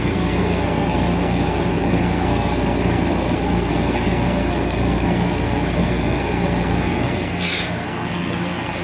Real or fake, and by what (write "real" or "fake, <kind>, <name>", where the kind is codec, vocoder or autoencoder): fake, codec, SNAC